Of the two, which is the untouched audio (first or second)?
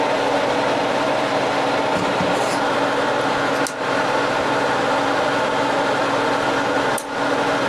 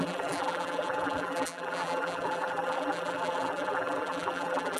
first